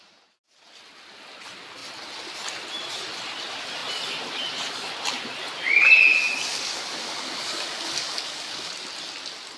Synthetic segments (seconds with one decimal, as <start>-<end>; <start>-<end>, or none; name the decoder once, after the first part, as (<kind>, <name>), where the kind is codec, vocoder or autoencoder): 6.5-8.7 (codec, DAC)

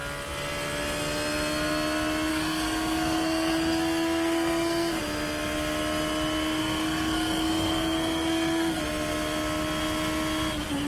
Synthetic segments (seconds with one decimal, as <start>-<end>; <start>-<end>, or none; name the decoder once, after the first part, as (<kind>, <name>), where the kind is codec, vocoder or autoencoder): 2.3-5.0 (codec, SNAC); 6.6-8.8

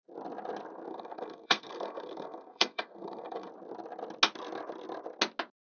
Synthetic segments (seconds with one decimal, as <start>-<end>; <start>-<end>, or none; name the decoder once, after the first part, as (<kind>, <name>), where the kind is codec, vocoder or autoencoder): 0.9-3.5 (codec, SNAC)

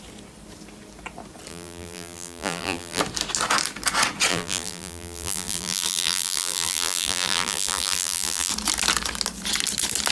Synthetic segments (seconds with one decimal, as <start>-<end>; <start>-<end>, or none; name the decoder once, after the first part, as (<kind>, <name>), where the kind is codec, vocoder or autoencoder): 1.5-3.0 (vocoder, BigVGAN v2); 4.3-8.5